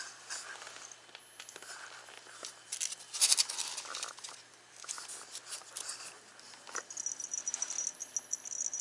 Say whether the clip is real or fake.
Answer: real